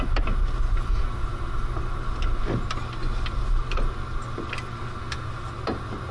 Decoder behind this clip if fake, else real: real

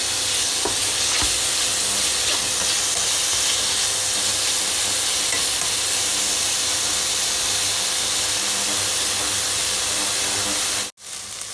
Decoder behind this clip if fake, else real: real